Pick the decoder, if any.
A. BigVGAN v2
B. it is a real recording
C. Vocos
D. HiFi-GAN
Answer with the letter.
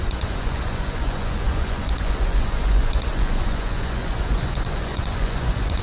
C